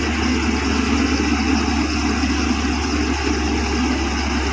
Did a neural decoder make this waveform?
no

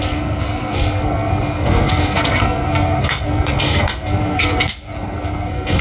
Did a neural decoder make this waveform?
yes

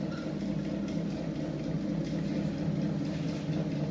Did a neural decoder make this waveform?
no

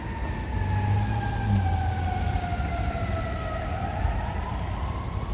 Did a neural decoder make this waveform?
no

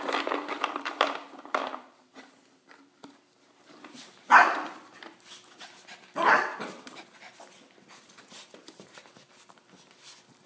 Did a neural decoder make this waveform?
yes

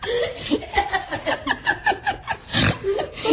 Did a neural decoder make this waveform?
yes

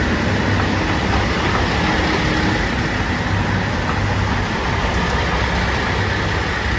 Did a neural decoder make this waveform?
no